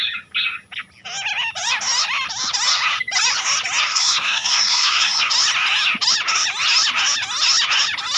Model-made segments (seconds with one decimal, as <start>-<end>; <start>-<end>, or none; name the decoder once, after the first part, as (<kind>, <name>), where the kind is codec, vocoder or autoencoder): 3.9-5.3 (codec, SNAC)